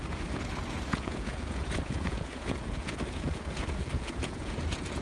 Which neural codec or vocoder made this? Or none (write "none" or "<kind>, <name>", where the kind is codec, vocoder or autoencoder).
vocoder, Vocos